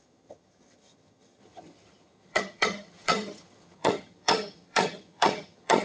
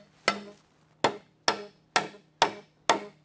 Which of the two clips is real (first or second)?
second